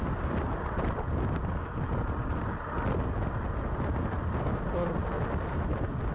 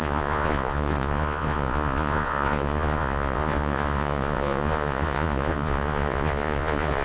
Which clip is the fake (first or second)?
second